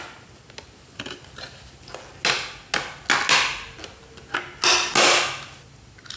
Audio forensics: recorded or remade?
recorded